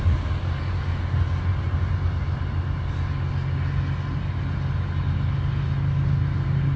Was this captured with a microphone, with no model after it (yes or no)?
yes